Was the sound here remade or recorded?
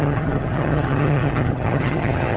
remade